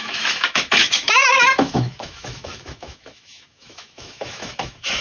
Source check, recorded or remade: remade